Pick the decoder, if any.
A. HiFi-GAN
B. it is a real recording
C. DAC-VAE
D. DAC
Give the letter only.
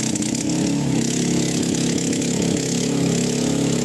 C